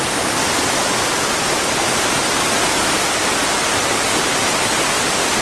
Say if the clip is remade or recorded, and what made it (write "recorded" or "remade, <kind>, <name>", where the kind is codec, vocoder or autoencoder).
recorded